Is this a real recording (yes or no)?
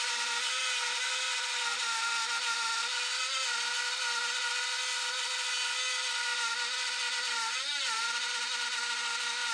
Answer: yes